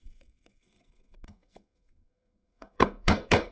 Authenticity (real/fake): fake